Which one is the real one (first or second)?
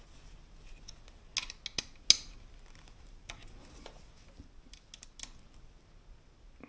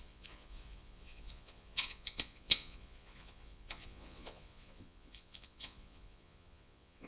first